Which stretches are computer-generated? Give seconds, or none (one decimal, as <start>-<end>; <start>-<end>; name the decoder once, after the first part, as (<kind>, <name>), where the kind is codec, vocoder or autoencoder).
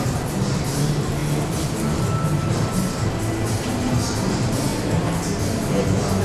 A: none